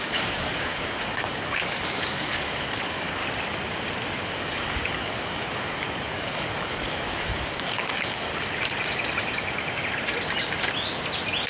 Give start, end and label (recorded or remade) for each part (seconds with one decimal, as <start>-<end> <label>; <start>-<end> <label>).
0.0-3.2 remade; 3.2-4.2 recorded; 4.2-8.3 remade; 8.3-11.5 recorded